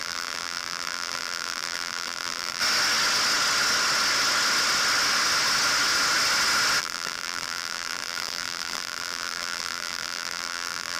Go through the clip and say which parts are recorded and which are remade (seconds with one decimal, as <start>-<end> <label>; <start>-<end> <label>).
0.0-2.6 remade; 2.6-6.8 recorded; 6.8-11.0 remade